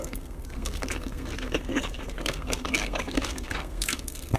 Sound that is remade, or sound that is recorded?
remade